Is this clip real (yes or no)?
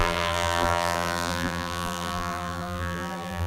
no